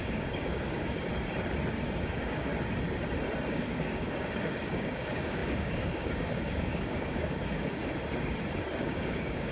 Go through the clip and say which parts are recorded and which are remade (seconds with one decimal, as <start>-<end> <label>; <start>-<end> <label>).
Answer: 0.0-1.1 remade; 1.1-2.0 recorded; 2.0-2.5 remade; 2.5-3.5 recorded; 3.5-7.8 remade; 7.8-8.8 recorded; 8.8-9.5 remade